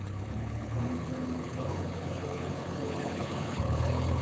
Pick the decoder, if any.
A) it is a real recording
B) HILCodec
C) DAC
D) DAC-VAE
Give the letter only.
B